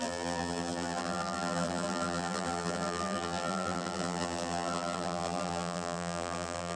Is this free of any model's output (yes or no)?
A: no